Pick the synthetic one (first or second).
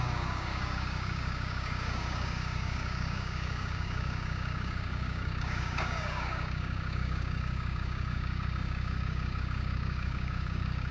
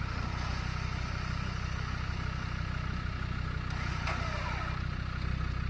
first